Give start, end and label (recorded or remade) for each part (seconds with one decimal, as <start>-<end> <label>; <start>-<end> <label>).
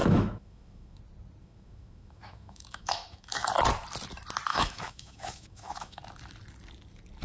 0.0-1.0 remade; 1.0-1.4 recorded; 1.4-3.5 remade; 3.5-4.5 recorded; 4.5-6.0 remade; 6.0-7.2 recorded